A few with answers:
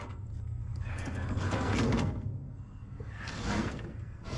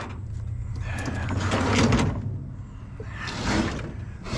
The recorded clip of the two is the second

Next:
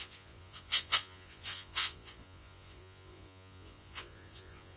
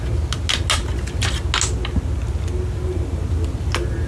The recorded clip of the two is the second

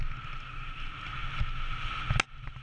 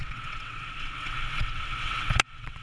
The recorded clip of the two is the first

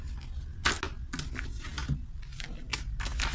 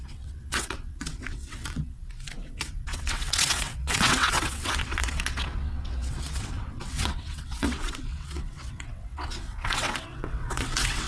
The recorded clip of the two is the first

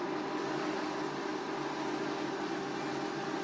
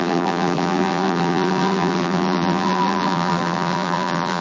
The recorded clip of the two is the first